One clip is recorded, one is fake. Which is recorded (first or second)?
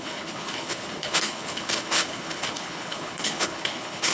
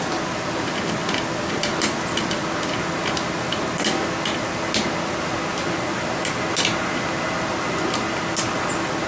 second